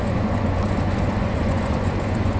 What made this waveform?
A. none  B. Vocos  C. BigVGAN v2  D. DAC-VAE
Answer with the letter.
B